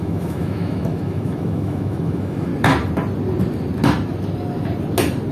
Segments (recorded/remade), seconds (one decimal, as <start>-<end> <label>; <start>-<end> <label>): 0.0-2.5 remade; 2.5-5.3 recorded